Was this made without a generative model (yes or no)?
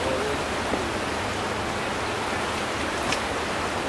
yes